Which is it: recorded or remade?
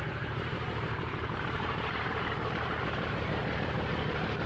remade